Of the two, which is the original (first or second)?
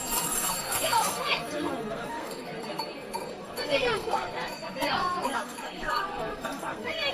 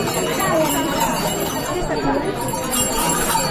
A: second